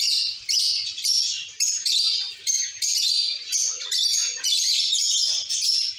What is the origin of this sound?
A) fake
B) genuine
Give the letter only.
A